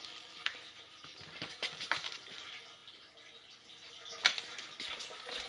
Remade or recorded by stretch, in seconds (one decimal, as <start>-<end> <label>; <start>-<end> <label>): 0.0-5.5 recorded